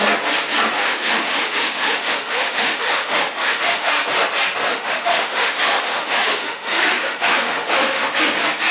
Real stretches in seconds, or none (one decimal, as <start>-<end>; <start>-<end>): 0.0-0.8; 3.9-4.7; 8.2-8.7